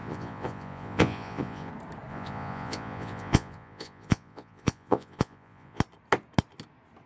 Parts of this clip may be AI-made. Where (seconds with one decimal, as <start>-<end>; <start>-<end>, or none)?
0.0-1.7; 2.1-5.8